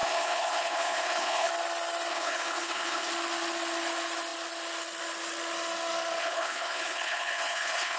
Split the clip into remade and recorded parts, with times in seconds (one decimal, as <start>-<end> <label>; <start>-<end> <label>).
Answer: 0.0-1.5 remade; 1.5-2.1 recorded; 2.1-3.1 remade; 3.1-6.2 recorded; 6.2-8.0 remade